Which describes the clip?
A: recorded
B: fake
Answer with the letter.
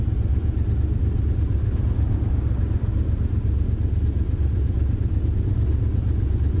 A